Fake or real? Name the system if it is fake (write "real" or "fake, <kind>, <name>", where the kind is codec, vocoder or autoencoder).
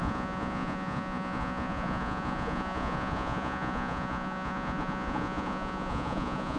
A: fake, vocoder, Vocos